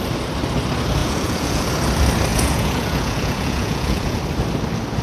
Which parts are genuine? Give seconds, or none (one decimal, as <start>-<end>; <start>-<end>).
0.0-1.0; 1.7-2.3; 4.2-5.0